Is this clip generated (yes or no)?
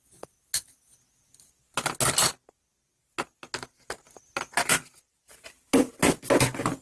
no